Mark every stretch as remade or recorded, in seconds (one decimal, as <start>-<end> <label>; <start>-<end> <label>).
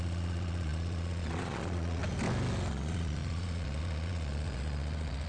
0.0-2.0 remade; 2.0-2.7 recorded; 2.7-5.3 remade